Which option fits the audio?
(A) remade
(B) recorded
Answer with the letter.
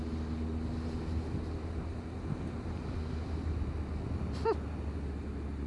B